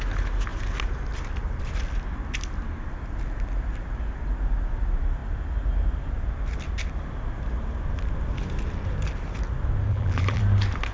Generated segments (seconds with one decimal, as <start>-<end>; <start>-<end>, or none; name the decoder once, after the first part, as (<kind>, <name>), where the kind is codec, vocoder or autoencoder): 9.9-10.4 (vocoder, BigVGAN v2)